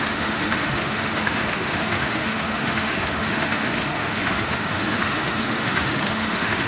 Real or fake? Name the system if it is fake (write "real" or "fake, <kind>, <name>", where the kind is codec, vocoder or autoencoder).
fake, autoencoder, DAC-VAE